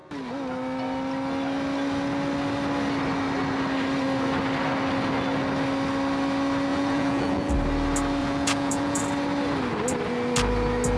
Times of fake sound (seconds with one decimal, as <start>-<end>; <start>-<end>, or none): 6.7-7.5; 8.2-9.0